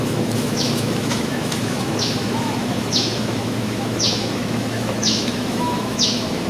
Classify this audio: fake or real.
fake